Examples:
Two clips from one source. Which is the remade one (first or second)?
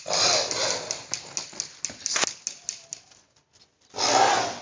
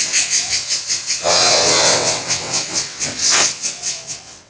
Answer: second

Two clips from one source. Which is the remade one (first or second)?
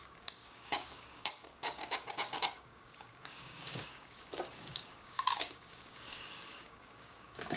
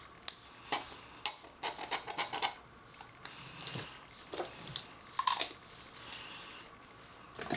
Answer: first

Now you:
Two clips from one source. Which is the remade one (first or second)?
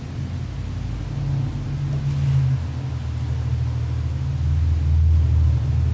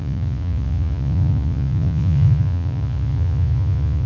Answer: second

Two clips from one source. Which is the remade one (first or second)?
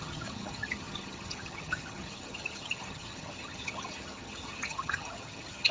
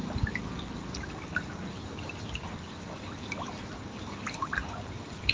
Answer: first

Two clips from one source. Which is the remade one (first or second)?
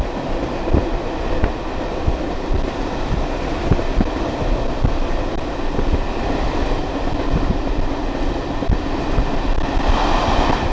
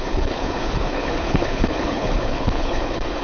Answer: second